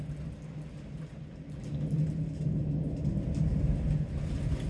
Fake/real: real